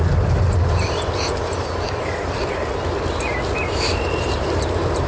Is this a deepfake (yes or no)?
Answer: no